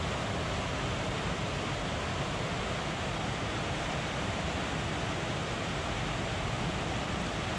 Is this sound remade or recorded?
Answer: recorded